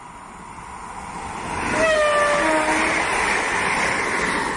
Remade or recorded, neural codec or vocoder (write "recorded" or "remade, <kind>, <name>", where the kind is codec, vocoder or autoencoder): recorded